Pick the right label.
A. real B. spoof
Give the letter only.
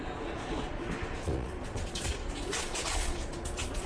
B